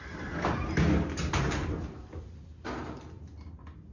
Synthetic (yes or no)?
no